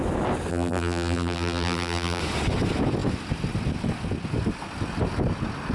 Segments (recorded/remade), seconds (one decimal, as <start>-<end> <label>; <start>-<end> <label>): 0.0-0.5 recorded; 0.5-2.2 remade; 2.2-5.7 recorded